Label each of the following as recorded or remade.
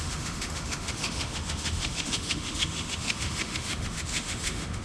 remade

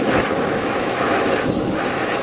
remade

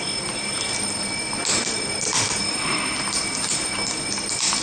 recorded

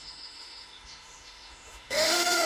remade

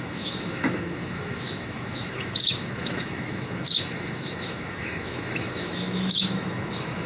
remade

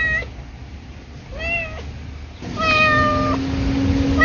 recorded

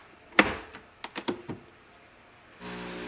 recorded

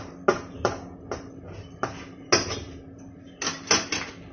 recorded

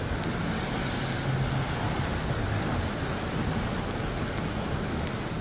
recorded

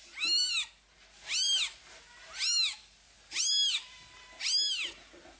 recorded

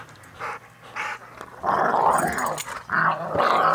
recorded